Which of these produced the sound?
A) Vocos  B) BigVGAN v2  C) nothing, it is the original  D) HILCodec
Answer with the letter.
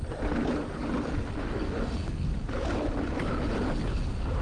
C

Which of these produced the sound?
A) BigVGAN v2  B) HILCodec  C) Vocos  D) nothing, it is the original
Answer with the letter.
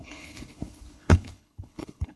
B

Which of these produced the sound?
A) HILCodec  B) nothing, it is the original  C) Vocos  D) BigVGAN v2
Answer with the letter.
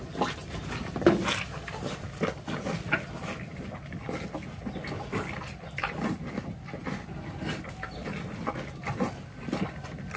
B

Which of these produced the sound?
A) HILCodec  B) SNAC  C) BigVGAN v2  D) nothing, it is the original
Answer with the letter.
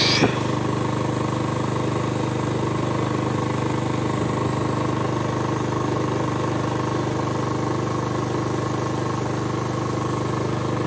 D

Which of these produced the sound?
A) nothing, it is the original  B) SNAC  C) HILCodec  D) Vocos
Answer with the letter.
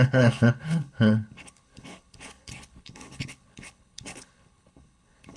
C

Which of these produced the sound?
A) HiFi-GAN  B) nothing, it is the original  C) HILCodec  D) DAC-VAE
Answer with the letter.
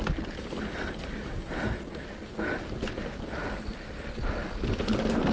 B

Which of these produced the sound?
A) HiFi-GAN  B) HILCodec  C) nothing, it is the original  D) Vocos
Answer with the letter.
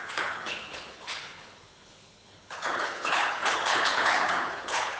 B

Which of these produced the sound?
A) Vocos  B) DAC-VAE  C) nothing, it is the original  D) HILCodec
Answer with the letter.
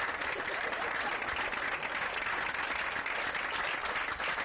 C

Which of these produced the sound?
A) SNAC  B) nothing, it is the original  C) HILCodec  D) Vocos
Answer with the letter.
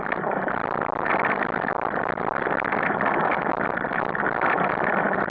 B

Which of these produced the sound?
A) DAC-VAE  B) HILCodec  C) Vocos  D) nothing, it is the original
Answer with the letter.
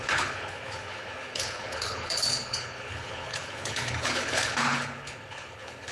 B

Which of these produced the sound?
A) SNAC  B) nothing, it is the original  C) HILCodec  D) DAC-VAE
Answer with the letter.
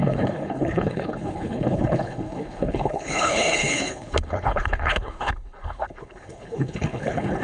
C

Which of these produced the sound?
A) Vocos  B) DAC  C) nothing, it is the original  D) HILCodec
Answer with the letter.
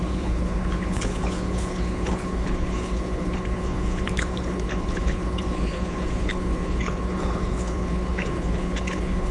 D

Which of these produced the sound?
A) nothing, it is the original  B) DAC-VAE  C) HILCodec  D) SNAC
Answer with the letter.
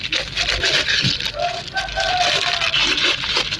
A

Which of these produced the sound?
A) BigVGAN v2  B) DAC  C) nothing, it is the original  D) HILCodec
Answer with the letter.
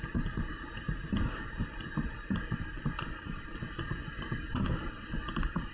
C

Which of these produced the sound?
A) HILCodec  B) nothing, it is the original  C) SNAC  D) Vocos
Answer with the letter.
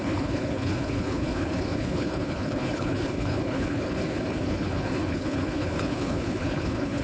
A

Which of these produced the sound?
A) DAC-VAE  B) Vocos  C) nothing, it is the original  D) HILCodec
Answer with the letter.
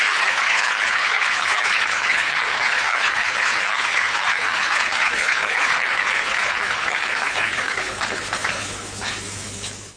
D